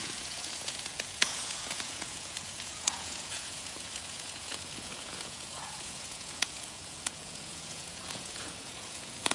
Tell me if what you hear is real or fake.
fake